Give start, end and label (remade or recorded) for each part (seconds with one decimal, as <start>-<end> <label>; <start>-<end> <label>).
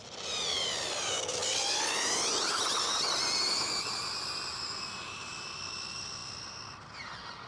0.0-7.5 recorded